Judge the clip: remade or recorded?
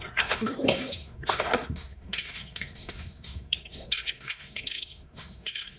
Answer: remade